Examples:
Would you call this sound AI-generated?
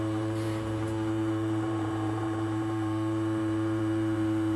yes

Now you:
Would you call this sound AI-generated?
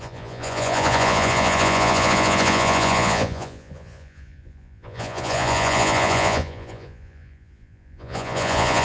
yes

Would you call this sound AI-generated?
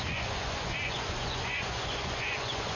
yes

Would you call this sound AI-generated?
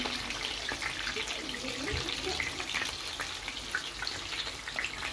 no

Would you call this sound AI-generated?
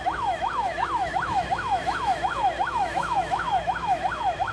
yes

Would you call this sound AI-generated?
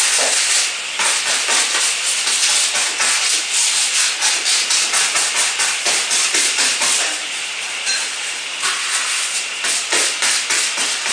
no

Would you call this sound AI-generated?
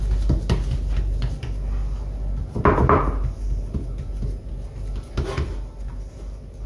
no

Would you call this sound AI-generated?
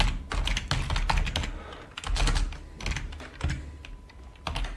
no